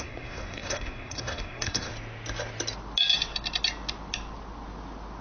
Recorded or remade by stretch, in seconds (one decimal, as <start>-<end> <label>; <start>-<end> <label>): 0.0-1.9 remade; 1.9-5.2 recorded